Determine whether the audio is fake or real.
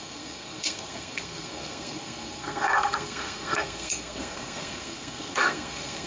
fake